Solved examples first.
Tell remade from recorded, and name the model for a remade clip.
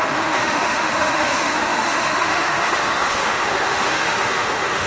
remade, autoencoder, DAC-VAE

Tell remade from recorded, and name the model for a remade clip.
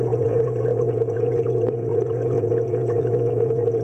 remade, vocoder, Vocos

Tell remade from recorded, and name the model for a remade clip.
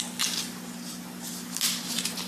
recorded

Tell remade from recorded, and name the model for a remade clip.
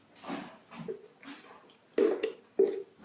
recorded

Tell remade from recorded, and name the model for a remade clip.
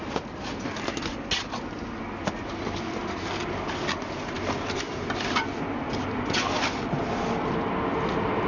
recorded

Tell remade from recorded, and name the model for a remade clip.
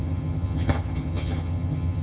remade, vocoder, HiFi-GAN